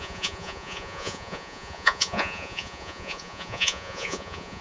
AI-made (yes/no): yes